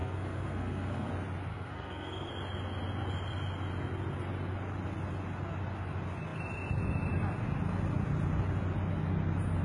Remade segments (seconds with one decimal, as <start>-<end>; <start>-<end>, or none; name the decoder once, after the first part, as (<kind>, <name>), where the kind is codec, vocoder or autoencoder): 0.0-1.1 (codec, SNAC); 1.5-2.3